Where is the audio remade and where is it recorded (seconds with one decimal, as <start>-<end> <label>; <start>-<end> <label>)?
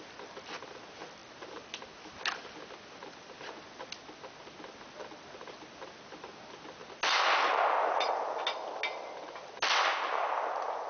0.0-10.9 recorded